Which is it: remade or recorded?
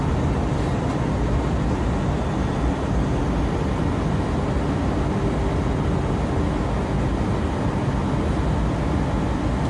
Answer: recorded